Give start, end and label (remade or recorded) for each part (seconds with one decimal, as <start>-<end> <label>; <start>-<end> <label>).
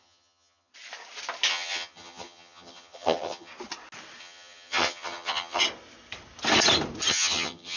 0.0-0.7 remade; 0.7-1.5 recorded; 1.5-3.5 remade; 3.5-4.2 recorded; 4.2-5.6 remade; 5.6-7.1 recorded; 7.1-7.8 remade